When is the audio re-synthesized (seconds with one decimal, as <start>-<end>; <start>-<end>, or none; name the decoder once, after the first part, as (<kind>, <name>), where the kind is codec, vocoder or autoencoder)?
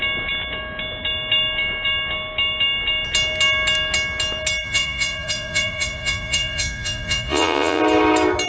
4.6-7.8 (vocoder, Vocos)